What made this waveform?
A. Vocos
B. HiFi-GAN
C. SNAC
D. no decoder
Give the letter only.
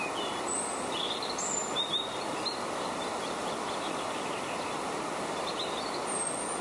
D